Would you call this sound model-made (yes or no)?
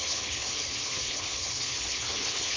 yes